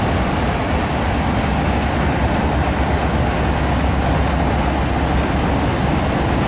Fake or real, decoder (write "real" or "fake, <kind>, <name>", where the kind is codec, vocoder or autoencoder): real